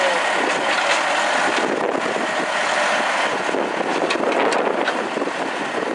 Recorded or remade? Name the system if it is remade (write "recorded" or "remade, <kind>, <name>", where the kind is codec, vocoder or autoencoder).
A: recorded